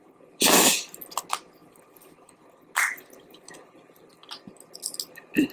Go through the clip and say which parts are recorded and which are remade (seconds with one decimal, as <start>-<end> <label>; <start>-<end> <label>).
0.0-5.5 recorded